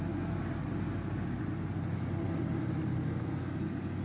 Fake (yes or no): no